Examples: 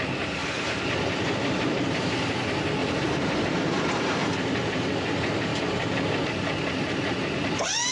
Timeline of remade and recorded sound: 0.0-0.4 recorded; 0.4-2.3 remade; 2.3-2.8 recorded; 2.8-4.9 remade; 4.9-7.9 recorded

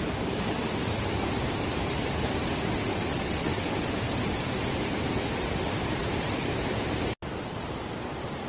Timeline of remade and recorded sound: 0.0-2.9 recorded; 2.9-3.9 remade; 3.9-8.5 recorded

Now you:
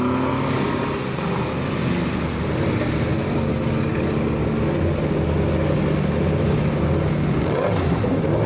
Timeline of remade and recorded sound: 0.0-8.5 recorded